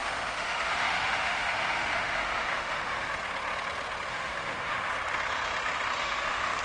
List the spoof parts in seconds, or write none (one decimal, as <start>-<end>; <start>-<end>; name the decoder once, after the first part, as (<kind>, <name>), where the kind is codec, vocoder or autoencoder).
0.0-3.1 (autoencoder, DAC-VAE); 4.1-4.9; 6.0-6.6